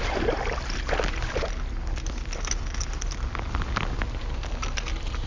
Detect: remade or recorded recorded